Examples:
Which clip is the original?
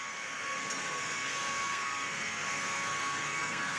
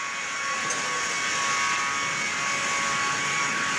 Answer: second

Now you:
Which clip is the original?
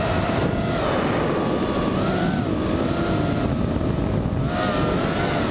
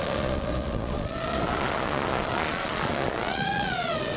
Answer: first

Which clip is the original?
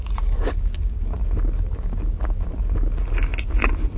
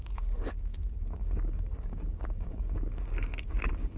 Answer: first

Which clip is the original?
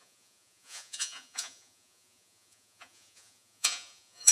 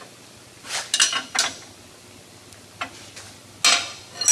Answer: second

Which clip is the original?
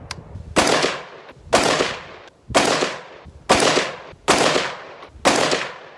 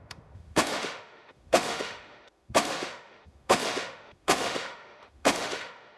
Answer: first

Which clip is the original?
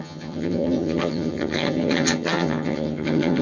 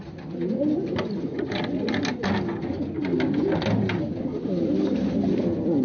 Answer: second